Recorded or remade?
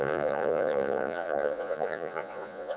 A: remade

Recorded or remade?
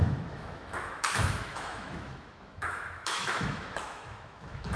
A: remade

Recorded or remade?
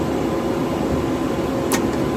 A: recorded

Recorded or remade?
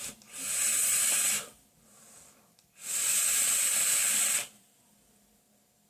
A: recorded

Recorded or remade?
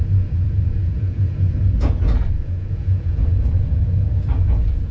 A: remade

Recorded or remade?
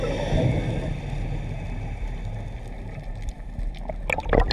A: recorded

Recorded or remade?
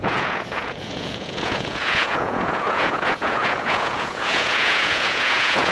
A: remade